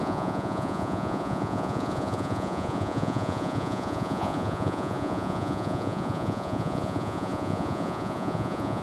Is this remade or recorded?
remade